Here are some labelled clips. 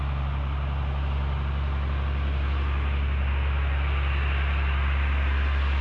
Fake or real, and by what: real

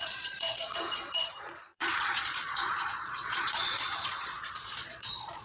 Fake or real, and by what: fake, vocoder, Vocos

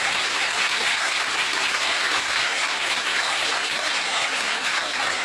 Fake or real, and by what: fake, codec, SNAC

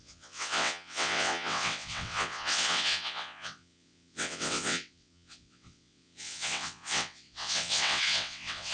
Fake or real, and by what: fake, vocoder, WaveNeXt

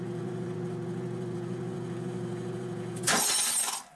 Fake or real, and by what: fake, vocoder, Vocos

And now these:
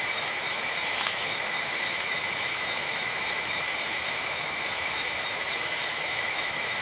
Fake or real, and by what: fake, autoencoder, DAC-VAE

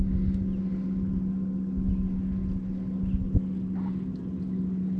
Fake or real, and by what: real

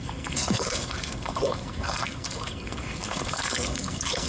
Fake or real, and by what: fake, codec, SNAC